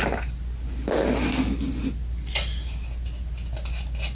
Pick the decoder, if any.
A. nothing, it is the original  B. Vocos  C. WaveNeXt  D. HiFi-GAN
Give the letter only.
A